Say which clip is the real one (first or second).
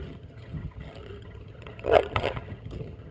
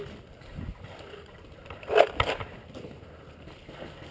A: second